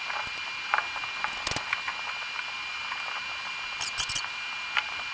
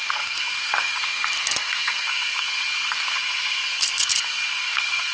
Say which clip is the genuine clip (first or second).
first